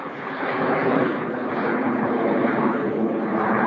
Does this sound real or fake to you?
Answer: fake